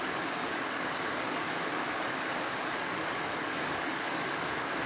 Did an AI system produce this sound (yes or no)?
yes